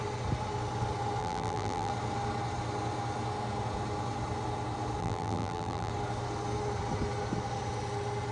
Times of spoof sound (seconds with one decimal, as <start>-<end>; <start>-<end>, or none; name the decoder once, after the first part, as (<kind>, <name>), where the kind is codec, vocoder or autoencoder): 1.2-1.9 (vocoder, BigVGAN v2); 5.0-5.9